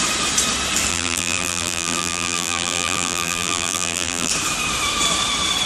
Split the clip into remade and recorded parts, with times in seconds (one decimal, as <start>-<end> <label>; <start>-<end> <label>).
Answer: 0.0-0.9 recorded; 0.9-4.3 remade; 4.3-5.7 recorded